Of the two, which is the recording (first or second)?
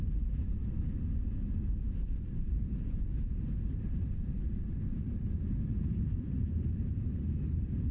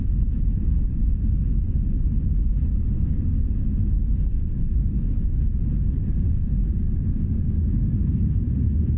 second